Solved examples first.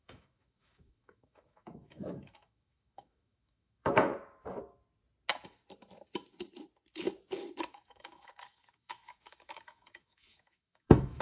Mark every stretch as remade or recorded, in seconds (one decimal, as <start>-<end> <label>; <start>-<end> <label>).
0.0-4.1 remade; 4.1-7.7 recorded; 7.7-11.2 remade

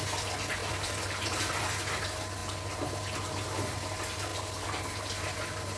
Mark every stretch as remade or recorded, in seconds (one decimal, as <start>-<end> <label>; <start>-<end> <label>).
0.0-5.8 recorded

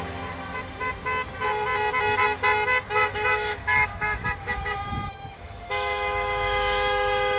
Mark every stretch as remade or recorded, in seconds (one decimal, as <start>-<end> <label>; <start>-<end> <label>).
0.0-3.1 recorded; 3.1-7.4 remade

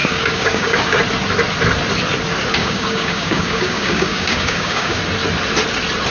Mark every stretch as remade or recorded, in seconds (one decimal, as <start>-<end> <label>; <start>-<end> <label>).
0.0-1.0 remade; 1.0-2.6 recorded; 2.6-5.0 remade; 5.0-6.1 recorded

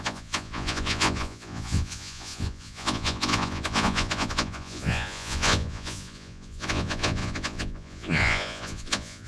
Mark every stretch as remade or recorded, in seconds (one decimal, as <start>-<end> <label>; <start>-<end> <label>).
0.0-9.3 remade